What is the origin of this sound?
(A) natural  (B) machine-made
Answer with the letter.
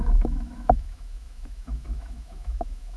B